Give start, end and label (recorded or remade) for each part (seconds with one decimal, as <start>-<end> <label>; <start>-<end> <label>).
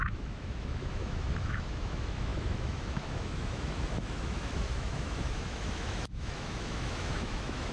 0.0-7.7 remade